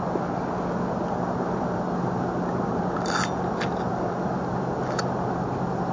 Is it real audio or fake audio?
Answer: real